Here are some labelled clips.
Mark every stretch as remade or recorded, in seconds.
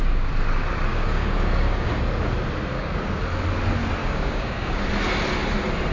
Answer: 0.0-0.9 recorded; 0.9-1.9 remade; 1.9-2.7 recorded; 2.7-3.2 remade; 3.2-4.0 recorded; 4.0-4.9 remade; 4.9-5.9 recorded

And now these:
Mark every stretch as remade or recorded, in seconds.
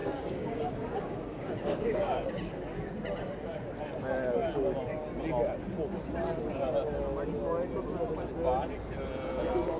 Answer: 0.0-2.3 remade; 2.3-9.8 recorded